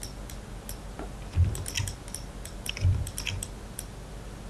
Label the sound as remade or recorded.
recorded